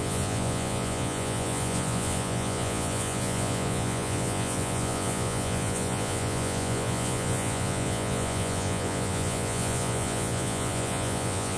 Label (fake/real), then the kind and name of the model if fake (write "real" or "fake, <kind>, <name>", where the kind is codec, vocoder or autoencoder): fake, vocoder, Vocos